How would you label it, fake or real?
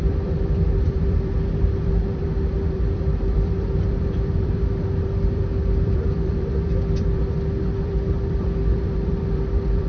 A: fake